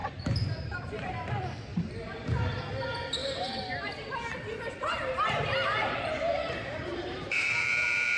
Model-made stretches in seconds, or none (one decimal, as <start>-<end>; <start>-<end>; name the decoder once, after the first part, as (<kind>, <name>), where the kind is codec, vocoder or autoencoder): 0.0-1.1 (vocoder, BigVGAN v2); 1.7-2.6; 3.2-8.2